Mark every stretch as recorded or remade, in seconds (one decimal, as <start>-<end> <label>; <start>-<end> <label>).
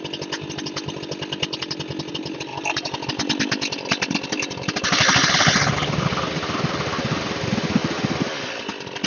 0.0-2.5 recorded; 2.5-5.5 remade; 5.5-9.1 recorded